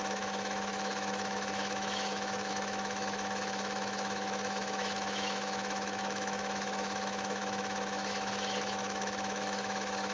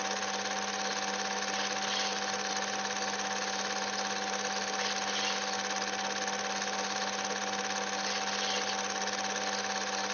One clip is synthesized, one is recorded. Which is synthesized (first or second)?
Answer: first